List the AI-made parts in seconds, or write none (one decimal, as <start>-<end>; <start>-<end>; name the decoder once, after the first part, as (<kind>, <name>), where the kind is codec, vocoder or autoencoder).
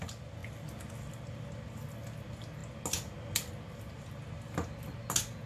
none